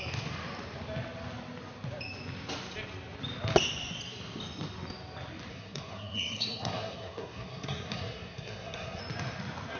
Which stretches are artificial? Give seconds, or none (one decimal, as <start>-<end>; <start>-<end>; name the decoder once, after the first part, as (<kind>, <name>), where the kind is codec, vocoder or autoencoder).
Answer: 5.5-9.0 (codec, SNAC)